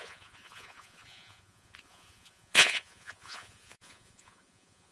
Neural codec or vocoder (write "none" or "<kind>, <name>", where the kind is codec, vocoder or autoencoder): vocoder, Vocos